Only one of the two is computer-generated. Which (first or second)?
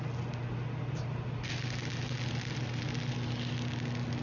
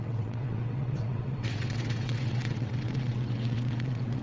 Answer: second